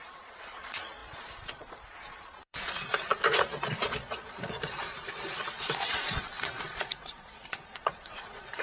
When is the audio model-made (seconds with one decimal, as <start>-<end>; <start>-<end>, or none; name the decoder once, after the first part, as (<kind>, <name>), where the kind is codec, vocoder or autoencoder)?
0.0-8.6 (vocoder, Vocos)